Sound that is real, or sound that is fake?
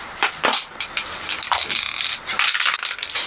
real